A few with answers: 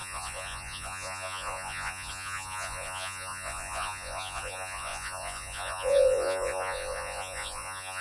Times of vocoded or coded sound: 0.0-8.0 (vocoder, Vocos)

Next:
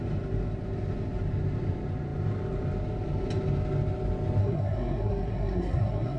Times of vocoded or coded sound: 4.4-6.2 (codec, SNAC)

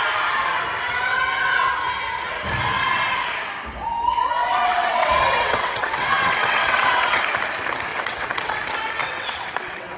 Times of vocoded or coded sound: 1.1-1.7 (vocoder, WaveNeXt); 4.4-7.2; 7.9-8.6; 9.0-10.0

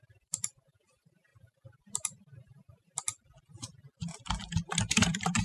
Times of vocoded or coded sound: 0.0-3.1 (vocoder, BigVGAN v2); 4.9-5.4

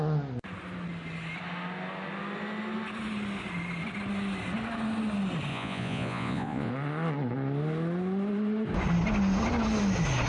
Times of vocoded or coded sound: 5.5-6.7 (vocoder, Vocos)

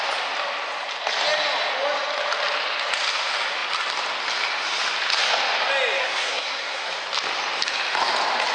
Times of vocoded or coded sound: 6.0-6.9 (codec, SNAC)